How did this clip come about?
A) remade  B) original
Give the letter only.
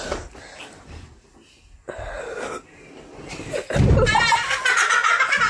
B